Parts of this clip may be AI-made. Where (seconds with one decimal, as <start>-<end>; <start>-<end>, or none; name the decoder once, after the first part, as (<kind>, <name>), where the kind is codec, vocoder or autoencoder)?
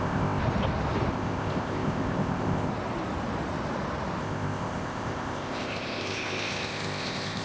0.0-0.4 (codec, ZipCodec); 1.1-2.7; 4.2-7.4